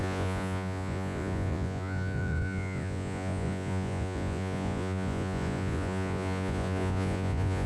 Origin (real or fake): fake